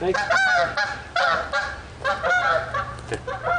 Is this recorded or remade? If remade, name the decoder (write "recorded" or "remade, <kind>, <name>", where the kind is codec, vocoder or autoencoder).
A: recorded